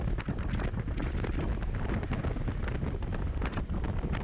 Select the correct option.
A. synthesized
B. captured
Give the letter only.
B